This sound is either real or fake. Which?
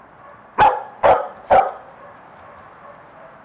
real